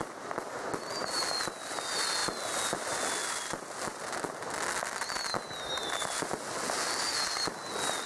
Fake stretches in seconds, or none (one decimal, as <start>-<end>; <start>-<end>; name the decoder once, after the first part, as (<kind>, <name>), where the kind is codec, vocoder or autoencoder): 2.2-4.5 (vocoder, BigVGAN v2)